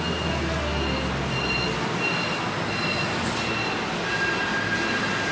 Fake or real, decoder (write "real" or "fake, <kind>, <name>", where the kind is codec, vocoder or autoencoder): real